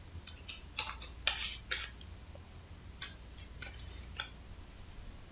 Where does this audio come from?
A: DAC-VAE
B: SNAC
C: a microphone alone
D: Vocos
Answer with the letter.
C